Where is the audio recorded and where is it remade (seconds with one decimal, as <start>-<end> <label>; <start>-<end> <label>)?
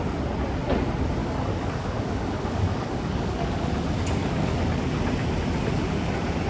0.0-1.2 recorded; 1.2-3.7 remade; 3.7-4.2 recorded; 4.2-4.9 remade; 4.9-6.5 recorded